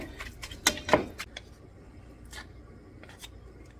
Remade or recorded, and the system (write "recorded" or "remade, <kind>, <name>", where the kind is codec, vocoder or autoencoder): recorded